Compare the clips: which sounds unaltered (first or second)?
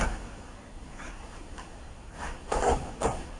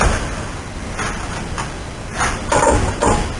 second